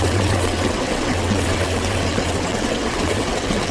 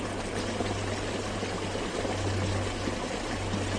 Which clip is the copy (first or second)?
first